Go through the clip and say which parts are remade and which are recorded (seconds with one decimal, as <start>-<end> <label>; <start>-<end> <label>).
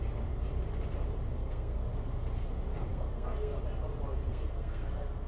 0.0-1.3 recorded; 1.3-1.9 remade; 1.9-2.9 recorded; 2.9-3.6 remade; 3.6-4.3 recorded; 4.3-5.3 remade